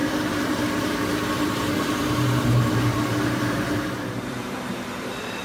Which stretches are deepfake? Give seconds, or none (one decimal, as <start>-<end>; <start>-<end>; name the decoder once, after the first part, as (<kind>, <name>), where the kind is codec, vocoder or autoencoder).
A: 0.0-5.4 (vocoder, BigVGAN v2)